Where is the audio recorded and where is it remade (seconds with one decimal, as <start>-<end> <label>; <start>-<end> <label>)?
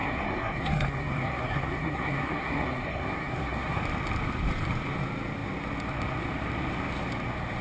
0.0-3.8 remade; 3.8-7.6 recorded